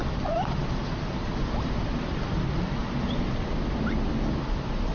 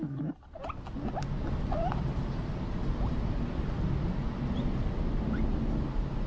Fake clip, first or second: first